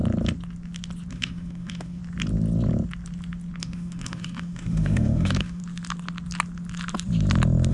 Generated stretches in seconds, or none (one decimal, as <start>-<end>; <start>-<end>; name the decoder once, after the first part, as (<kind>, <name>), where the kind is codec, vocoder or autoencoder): 1.1-2.0 (autoencoder, DAC-VAE); 3.6-5.6